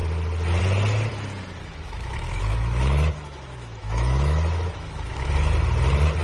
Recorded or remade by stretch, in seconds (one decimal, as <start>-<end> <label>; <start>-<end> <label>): 0.0-1.6 recorded; 1.6-5.3 remade; 5.3-6.2 recorded